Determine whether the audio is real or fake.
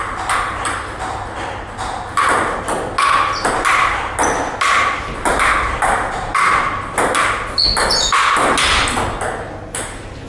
real